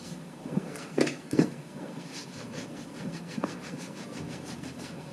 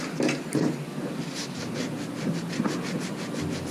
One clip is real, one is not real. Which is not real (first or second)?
first